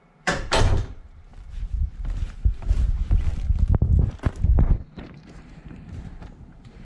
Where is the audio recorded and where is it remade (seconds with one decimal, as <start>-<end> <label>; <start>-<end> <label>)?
0.0-1.3 remade; 1.3-1.9 recorded; 1.9-3.0 remade; 3.0-4.8 recorded; 4.8-6.8 remade

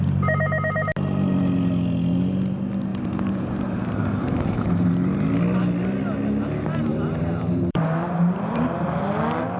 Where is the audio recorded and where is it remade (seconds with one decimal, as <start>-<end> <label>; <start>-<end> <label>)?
0.0-2.9 recorded; 2.9-4.9 remade; 4.9-6.9 recorded; 6.9-9.0 remade; 9.0-9.6 recorded

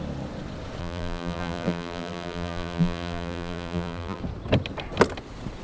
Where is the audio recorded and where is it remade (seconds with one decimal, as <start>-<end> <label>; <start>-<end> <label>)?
0.0-0.8 recorded; 0.8-4.2 remade; 4.2-5.6 recorded

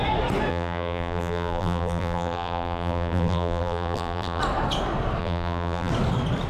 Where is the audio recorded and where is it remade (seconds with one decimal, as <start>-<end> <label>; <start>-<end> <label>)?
0.0-0.5 recorded; 0.5-4.4 remade; 4.4-5.2 recorded; 5.2-5.9 remade; 5.9-6.5 recorded

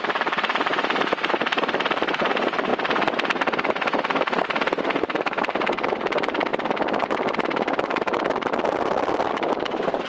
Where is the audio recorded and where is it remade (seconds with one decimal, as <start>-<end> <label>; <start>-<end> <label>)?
0.0-0.7 remade; 0.7-1.6 recorded; 1.6-2.7 remade; 2.7-5.0 recorded; 5.0-6.5 remade; 6.5-9.3 recorded; 9.3-10.1 remade